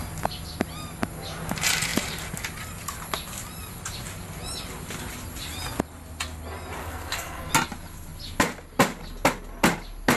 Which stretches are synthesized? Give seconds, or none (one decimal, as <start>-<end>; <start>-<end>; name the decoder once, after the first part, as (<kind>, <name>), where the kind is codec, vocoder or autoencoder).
6.8-7.5 (codec, SNAC)